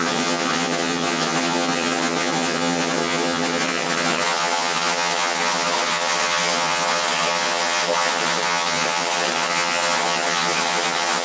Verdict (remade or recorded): remade